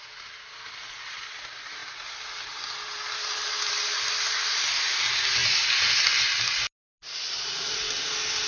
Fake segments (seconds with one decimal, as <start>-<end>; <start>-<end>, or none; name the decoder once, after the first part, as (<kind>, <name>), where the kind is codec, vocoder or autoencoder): none